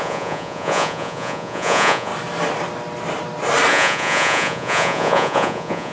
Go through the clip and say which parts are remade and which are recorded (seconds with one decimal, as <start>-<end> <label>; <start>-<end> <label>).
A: 0.0-2.1 remade; 2.1-3.7 recorded; 3.7-5.9 remade